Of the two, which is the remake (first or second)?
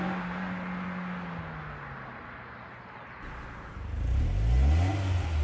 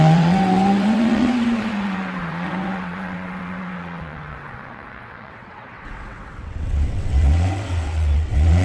second